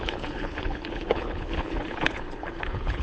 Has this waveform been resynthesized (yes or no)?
yes